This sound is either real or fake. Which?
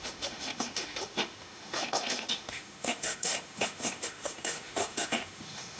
fake